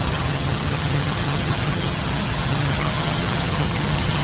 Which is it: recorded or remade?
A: remade